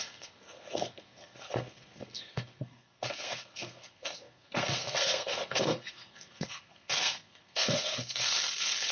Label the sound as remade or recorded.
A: remade